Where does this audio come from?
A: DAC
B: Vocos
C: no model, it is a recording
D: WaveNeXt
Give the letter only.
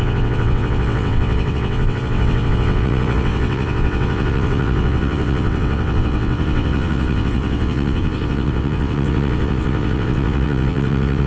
D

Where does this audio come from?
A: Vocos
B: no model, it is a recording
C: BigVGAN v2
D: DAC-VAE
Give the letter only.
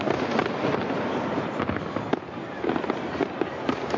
B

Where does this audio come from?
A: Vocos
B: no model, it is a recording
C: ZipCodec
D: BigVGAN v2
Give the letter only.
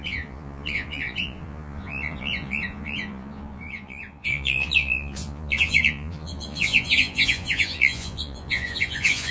A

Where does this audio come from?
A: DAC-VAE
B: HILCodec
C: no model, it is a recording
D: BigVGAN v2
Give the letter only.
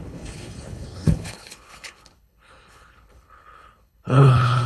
B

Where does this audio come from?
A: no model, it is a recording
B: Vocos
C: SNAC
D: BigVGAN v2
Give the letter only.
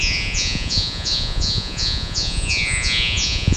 B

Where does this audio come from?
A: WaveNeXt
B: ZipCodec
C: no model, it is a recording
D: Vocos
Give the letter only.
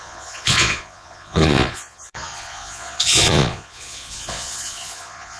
D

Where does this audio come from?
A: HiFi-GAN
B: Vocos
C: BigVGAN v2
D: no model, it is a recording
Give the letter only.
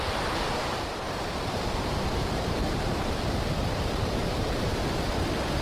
C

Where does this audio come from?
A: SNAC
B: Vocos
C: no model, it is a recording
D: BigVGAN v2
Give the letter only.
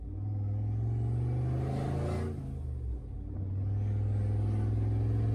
C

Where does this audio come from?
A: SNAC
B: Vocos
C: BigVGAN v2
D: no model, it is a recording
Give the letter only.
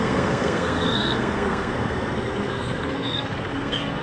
A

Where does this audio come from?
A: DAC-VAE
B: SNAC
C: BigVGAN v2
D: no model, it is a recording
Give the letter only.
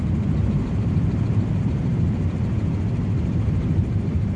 C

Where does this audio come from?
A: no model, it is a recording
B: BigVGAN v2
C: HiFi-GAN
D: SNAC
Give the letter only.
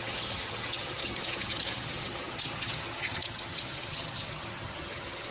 C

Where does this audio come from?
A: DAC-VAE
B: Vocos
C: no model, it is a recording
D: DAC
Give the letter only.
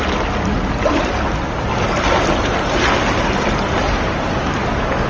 C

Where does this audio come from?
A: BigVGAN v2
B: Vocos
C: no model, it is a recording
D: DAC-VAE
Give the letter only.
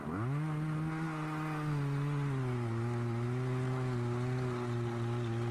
C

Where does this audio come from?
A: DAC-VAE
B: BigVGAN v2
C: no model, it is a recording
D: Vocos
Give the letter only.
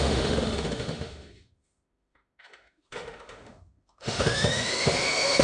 A